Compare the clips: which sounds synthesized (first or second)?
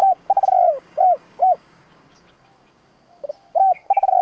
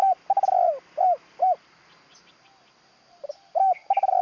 first